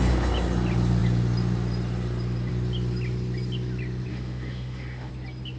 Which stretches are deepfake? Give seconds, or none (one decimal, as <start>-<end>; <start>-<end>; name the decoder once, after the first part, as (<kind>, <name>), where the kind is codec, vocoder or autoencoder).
4.1-5.1 (autoencoder, DAC-VAE)